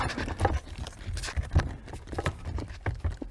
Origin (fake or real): real